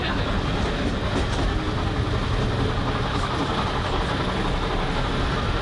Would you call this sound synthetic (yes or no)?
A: no